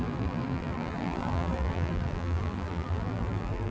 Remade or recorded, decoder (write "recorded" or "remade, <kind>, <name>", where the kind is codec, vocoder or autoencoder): remade, vocoder, BigVGAN v2